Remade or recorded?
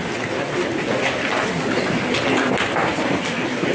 recorded